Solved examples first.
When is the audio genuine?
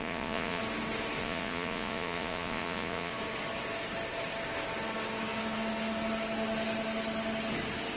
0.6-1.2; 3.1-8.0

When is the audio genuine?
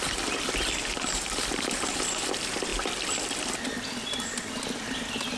0.0-5.4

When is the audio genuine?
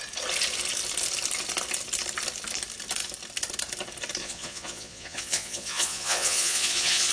0.0-4.2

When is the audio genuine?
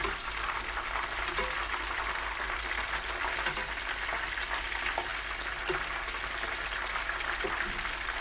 0.0-8.2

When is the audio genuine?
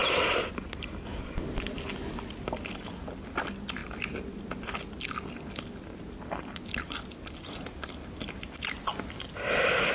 0.0-9.9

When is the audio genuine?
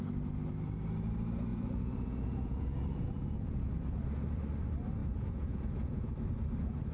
0.0-1.5; 3.8-5.0; 6.1-6.9